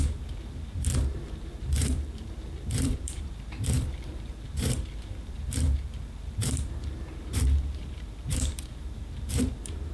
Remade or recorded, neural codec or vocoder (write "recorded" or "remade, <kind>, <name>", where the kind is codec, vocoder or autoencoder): remade, vocoder, BigVGAN v2